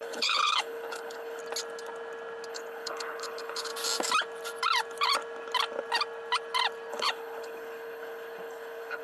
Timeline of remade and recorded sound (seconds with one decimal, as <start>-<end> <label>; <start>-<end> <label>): 0.0-1.4 remade; 1.4-2.5 recorded; 2.5-3.7 remade; 3.7-6.9 recorded; 6.9-9.0 remade